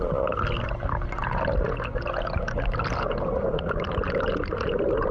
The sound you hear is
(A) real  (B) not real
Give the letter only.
A